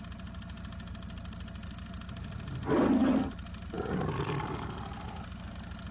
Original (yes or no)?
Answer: yes